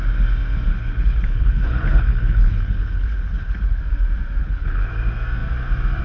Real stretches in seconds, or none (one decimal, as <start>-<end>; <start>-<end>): 0.0-0.7; 3.8-4.4; 4.9-6.0